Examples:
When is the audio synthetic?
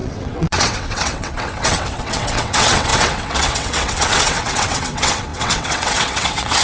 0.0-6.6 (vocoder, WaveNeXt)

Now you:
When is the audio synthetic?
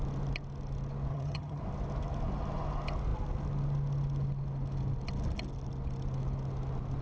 1.1-1.6 (vocoder, HiFi-GAN)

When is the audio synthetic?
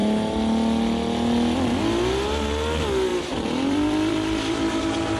3.1-4.8 (vocoder, BigVGAN v2)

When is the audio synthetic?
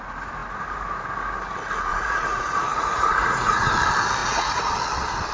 1.9-3.7 (vocoder, Vocos); 4.2-4.7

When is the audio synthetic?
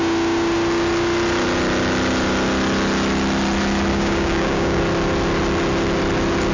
3.9-4.8 (codec, DAC)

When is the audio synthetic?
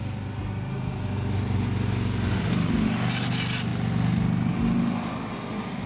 none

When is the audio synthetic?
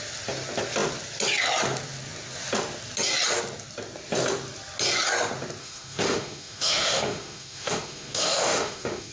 5.6-9.1 (autoencoder, DAC-VAE)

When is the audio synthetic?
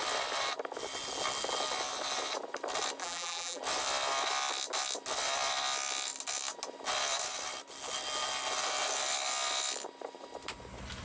3.0-3.6 (vocoder, BigVGAN v2)